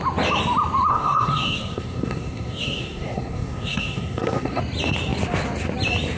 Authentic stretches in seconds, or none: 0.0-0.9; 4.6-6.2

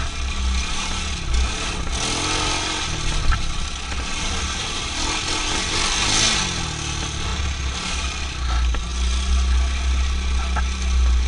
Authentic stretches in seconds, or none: 0.0-11.3